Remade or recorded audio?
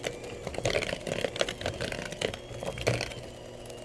recorded